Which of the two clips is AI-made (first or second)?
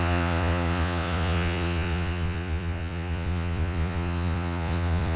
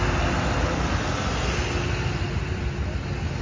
first